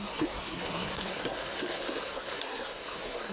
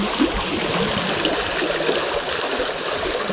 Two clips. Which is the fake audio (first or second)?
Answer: first